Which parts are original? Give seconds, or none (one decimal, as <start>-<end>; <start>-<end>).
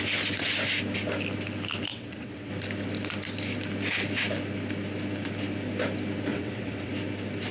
0.0-1.9; 2.5-6.3; 6.9-7.5